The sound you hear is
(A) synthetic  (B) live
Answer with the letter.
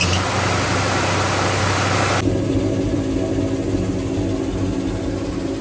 B